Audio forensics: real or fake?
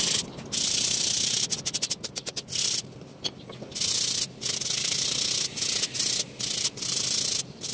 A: real